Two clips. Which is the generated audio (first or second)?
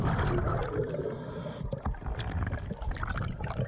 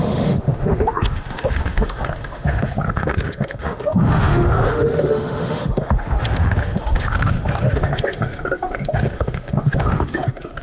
second